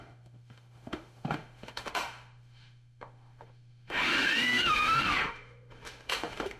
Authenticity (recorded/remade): remade